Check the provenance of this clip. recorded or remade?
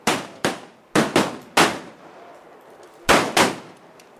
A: recorded